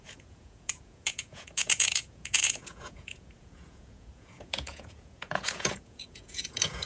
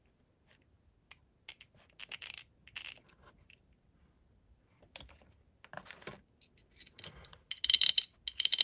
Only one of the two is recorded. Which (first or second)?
second